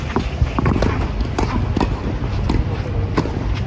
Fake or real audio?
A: real